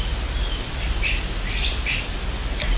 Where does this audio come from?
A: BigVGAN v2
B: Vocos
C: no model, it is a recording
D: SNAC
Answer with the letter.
C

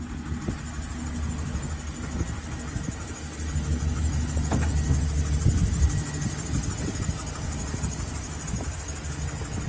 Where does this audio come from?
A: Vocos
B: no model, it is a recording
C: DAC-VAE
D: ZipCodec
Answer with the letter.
B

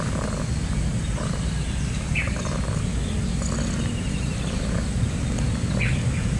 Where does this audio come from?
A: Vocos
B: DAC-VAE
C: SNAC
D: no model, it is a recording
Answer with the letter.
D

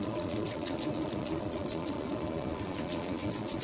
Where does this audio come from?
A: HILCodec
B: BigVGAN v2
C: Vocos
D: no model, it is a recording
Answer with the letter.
C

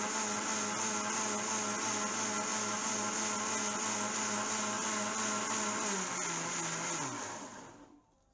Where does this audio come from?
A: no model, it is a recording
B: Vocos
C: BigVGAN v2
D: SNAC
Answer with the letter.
A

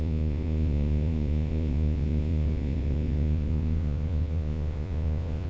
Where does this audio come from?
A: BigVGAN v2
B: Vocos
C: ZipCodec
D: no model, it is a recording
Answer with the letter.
B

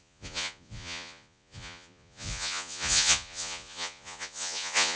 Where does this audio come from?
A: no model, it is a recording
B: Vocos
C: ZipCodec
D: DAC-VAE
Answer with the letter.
B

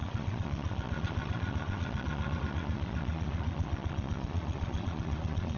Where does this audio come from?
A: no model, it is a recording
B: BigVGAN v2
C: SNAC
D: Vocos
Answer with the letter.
D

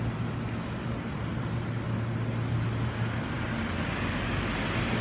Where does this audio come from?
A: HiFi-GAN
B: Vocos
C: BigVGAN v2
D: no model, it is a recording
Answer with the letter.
D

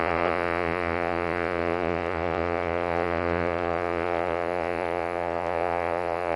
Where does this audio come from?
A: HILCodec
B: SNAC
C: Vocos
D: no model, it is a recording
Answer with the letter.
C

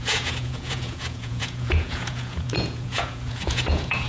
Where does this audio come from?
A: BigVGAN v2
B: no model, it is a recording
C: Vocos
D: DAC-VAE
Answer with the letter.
C